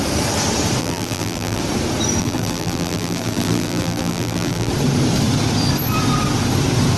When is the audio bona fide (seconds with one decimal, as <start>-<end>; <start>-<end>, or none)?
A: 0.0-0.8; 1.6-2.2; 4.7-7.0